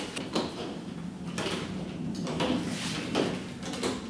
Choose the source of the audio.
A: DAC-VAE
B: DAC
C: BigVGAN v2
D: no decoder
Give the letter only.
D